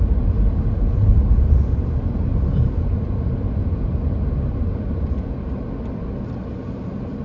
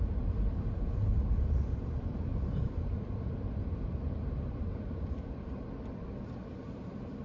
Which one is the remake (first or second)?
second